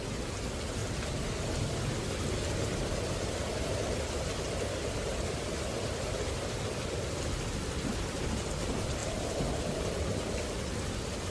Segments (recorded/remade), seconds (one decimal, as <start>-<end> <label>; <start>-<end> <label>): 0.0-11.3 recorded